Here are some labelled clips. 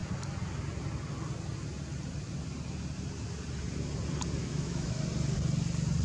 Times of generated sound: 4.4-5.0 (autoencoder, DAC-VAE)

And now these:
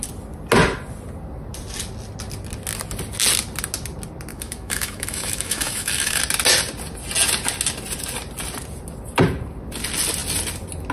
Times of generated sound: 4.3-6.2 (autoencoder, DAC-VAE)